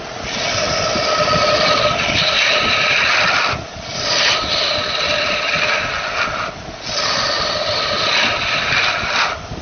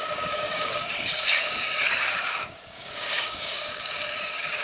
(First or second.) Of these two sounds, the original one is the first